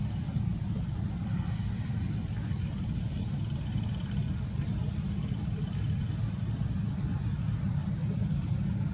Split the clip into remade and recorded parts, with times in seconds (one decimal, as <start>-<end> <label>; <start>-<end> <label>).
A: 0.0-8.9 recorded